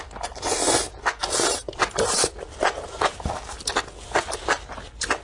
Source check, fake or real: real